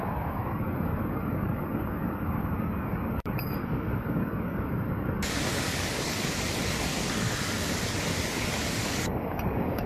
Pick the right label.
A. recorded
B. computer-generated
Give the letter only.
B